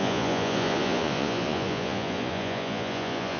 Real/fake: fake